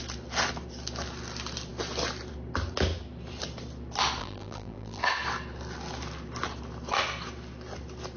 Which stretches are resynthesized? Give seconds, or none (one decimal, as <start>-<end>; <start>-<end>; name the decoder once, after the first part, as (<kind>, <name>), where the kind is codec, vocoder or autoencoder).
4.2-5.0 (vocoder, BigVGAN v2)